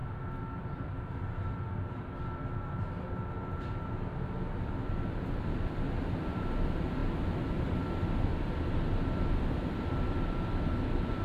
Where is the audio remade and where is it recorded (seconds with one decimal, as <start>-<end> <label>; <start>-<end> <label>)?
0.0-0.6 recorded; 0.6-11.2 remade